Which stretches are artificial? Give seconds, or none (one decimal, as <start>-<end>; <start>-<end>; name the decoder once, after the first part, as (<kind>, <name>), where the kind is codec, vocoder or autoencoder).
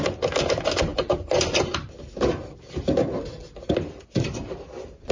0.9-3.3 (vocoder, BigVGAN v2)